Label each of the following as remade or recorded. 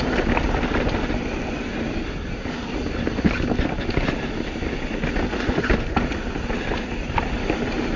recorded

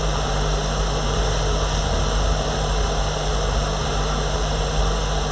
remade